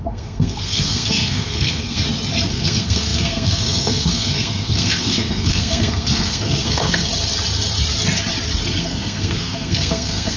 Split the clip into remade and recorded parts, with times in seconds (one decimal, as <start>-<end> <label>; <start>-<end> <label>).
0.0-2.0 remade; 2.0-2.5 recorded; 2.5-7.1 remade; 7.1-8.8 recorded; 8.8-10.4 remade